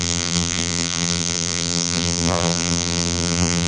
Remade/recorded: remade